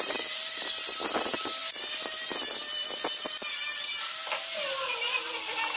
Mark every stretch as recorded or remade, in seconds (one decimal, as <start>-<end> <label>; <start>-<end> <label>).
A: 0.0-1.6 recorded; 1.6-5.1 remade; 5.1-5.8 recorded